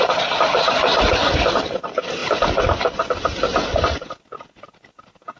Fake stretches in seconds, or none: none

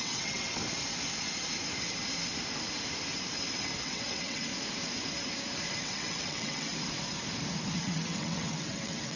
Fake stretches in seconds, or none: 0.0-0.6 (vocoder, WaveNeXt); 3.8-4.5; 5.8-6.7; 7.8-9.2